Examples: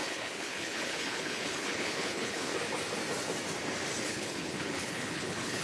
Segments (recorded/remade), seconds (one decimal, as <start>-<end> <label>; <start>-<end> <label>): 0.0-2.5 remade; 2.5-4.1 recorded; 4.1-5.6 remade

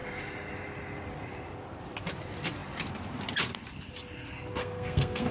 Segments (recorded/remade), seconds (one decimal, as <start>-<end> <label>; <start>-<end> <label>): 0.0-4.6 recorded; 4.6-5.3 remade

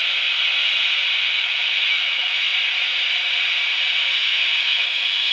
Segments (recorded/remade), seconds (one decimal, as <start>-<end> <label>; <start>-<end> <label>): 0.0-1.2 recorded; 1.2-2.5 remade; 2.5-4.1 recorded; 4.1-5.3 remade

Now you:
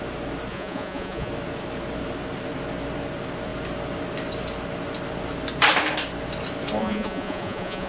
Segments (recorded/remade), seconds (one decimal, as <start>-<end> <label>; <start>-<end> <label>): 0.0-0.5 recorded; 0.5-1.3 remade; 1.3-6.8 recorded; 6.8-7.9 remade

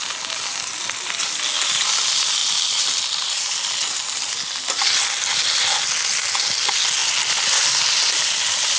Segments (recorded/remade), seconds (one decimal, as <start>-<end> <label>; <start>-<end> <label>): 0.0-8.8 recorded